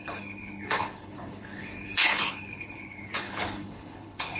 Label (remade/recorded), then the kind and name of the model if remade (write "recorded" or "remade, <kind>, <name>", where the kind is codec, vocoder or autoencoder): remade, codec, HILCodec